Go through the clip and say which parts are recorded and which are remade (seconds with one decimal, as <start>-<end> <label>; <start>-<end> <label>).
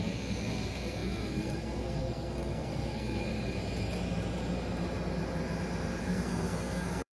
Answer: 0.0-3.3 remade; 3.3-6.0 recorded; 6.0-7.2 remade